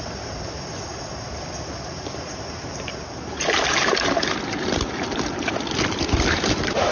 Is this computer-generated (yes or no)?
yes